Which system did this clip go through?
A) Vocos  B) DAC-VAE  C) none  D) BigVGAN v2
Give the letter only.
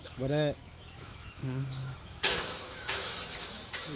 B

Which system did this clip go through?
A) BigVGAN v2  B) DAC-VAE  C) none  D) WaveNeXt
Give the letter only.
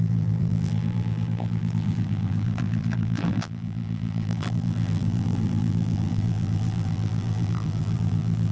A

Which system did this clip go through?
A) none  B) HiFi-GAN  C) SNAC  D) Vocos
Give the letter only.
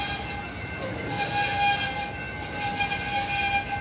A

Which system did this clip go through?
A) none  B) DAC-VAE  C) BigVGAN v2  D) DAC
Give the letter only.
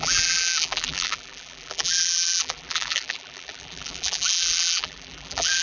C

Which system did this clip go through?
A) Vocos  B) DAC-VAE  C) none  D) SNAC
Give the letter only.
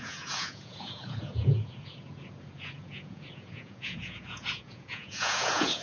A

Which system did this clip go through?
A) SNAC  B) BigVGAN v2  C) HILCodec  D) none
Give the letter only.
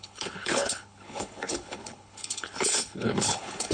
C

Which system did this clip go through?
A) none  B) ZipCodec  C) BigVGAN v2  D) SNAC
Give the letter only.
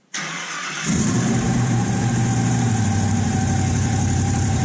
C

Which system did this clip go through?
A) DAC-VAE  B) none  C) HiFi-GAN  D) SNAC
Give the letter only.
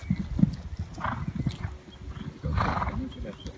B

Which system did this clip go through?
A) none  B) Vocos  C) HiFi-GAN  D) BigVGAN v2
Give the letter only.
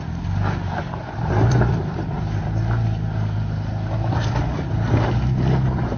D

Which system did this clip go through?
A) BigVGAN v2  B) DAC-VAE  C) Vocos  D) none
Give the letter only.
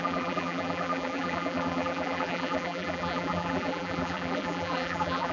A